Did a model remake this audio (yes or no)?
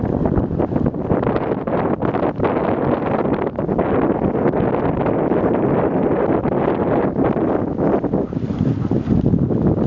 no